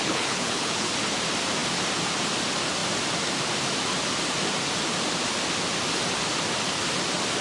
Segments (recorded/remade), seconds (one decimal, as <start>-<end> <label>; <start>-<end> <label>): 0.0-0.9 remade; 0.9-7.4 recorded